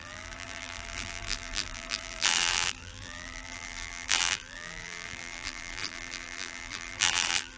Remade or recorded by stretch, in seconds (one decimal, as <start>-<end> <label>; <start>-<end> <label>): 0.0-7.6 remade